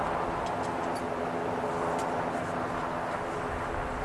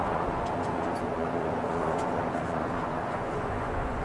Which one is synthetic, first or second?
second